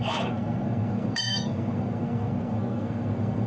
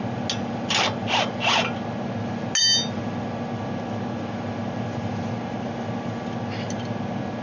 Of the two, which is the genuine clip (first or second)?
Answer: second